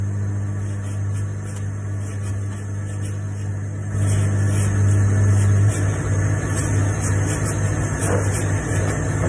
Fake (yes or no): no